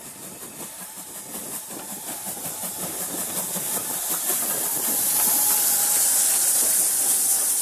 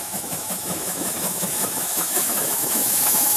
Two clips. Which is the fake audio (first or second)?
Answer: second